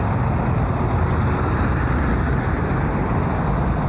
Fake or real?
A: real